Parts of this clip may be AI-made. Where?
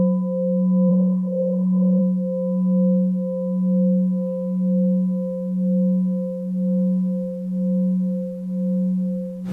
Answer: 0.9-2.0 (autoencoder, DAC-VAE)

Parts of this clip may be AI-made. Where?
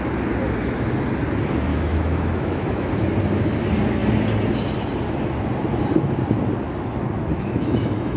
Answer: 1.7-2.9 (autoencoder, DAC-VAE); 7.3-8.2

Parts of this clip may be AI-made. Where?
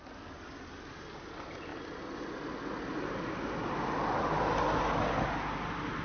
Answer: 1.7-2.5 (vocoder, BigVGAN v2)